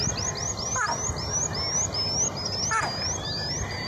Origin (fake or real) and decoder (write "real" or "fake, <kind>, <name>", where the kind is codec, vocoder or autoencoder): real